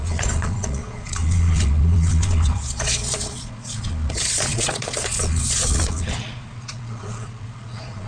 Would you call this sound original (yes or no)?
no